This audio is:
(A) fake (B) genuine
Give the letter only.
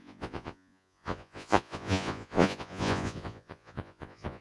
A